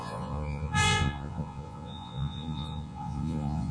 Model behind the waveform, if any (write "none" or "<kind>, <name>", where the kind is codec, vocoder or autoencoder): vocoder, Vocos